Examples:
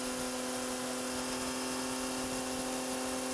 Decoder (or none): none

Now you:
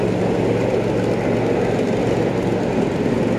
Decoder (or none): none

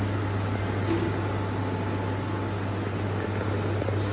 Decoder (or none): none